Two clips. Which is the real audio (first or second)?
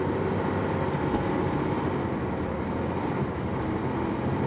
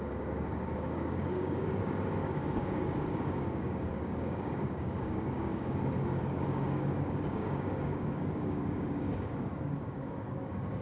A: first